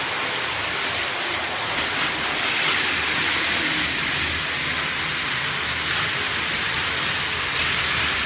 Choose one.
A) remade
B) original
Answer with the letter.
B